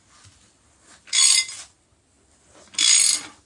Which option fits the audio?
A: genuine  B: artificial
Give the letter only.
A